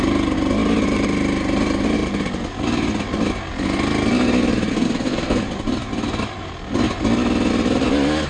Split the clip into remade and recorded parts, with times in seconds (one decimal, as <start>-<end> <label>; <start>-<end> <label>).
0.0-4.7 recorded; 4.7-5.4 remade; 5.4-8.3 recorded